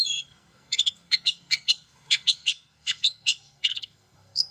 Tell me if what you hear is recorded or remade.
remade